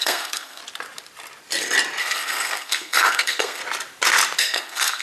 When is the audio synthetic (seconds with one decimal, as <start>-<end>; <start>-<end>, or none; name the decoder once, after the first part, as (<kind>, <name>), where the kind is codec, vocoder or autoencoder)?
0.0-0.6 (codec, SNAC); 2.0-3.6; 4.4-5.0